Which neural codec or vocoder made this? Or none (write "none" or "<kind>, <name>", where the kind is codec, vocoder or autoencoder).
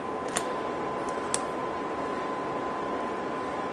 none